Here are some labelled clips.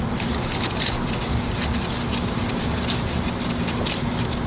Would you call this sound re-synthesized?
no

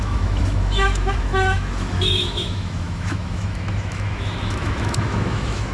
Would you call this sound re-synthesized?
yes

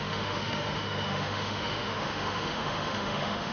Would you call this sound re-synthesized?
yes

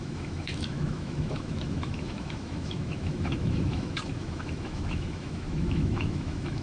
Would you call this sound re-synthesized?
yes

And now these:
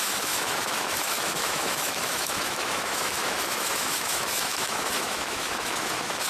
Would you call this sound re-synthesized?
yes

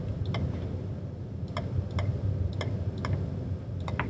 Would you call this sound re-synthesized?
no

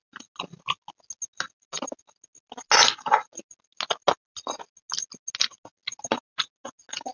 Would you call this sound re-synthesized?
no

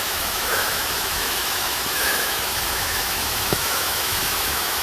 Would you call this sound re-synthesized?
yes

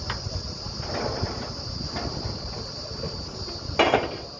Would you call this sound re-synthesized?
no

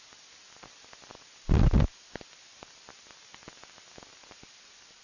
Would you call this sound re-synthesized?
no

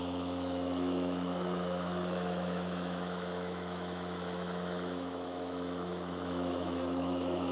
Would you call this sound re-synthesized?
yes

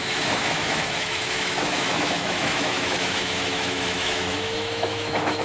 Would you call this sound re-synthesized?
yes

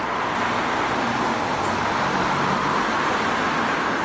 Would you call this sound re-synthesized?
no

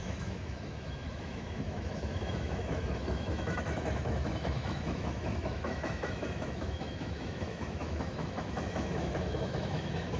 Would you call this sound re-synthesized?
yes